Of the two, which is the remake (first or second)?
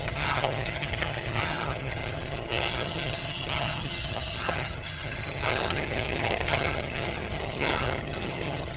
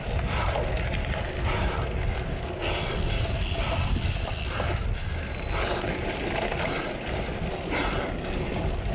first